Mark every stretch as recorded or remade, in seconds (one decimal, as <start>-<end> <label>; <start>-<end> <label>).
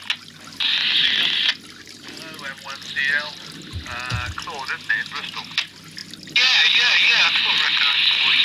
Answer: 0.0-8.4 recorded